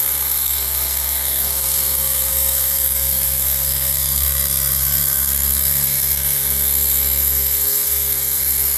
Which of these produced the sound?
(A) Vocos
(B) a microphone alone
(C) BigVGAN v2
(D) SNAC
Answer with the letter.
D